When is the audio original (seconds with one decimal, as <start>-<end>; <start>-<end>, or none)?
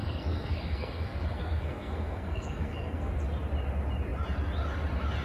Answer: 3.1-5.2